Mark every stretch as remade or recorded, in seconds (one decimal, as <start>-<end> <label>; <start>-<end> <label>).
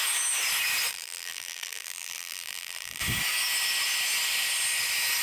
0.0-0.9 recorded; 0.9-3.0 remade; 3.0-5.2 recorded